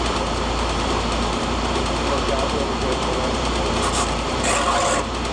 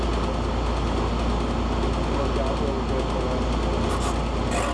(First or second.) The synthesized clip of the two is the first